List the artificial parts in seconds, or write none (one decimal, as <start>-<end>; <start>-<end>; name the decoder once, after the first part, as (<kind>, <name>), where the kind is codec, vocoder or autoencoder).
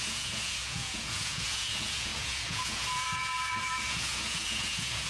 0.0-5.1 (vocoder, Vocos)